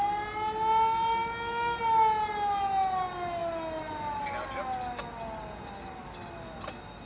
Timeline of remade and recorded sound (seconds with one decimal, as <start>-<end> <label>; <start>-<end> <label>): 0.0-7.1 recorded